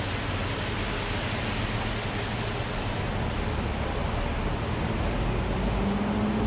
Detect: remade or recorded recorded